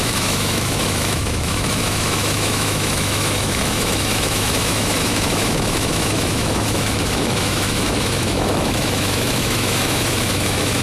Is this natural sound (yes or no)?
no